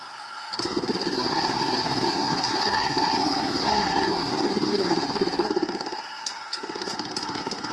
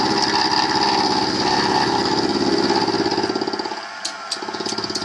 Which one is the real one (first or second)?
second